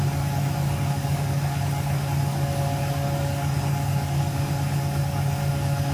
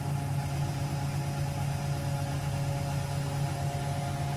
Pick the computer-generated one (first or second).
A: first